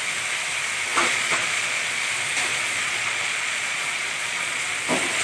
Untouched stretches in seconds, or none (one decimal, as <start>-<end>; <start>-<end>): 0.0-0.9; 2.0-2.5; 4.6-5.2

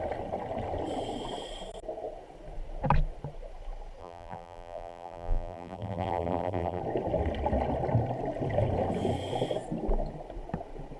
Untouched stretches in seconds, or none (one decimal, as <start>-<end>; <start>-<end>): 0.0-4.0; 6.8-11.0

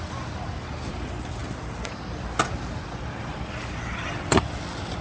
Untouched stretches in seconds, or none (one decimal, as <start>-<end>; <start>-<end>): 0.0-5.0

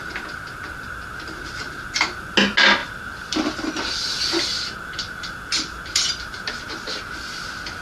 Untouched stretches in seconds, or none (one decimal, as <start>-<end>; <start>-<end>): 0.0-2.8; 6.3-7.8

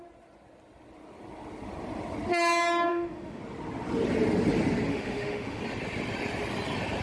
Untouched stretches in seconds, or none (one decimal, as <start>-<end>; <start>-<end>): 0.0-2.9; 3.4-4.9; 5.6-7.0

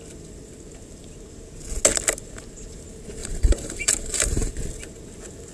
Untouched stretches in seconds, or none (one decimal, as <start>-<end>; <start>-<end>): 0.0-3.2; 4.5-5.5

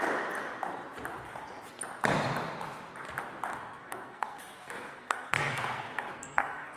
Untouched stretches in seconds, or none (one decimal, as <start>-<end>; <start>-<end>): 0.0-3.5

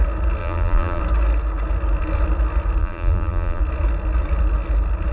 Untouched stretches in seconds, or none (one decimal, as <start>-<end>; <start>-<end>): 0.0-0.4; 1.0-2.8; 3.6-5.1